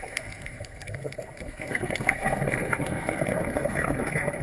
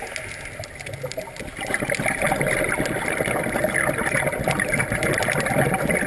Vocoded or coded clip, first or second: first